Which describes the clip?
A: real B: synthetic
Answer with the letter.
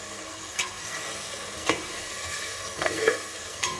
B